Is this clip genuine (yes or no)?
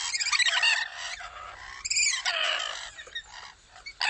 yes